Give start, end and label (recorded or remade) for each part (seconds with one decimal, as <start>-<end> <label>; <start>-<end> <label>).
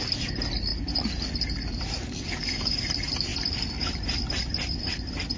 0.0-3.3 recorded; 3.3-5.4 remade